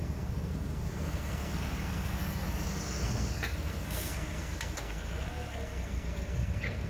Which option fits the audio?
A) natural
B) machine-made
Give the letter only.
B